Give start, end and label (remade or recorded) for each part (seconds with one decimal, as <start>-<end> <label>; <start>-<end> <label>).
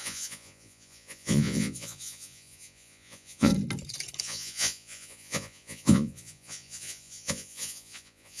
0.0-3.5 remade; 3.5-4.2 recorded; 4.2-8.4 remade